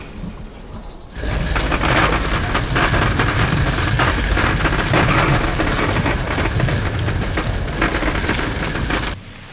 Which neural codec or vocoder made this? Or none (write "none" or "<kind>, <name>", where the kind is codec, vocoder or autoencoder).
none